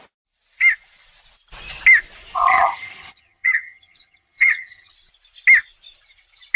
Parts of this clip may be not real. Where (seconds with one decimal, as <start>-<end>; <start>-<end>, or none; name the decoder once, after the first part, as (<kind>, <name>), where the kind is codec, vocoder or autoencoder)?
2.5-4.9 (vocoder, HiFi-GAN)